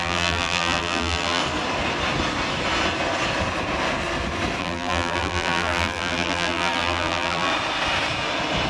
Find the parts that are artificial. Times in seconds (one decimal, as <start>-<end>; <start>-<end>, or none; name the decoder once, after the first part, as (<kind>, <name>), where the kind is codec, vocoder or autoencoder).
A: 0.0-1.4 (vocoder, BigVGAN v2); 4.6-7.5